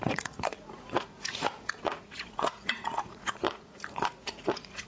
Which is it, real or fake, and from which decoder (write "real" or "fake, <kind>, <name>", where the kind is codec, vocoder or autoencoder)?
fake, vocoder, Vocos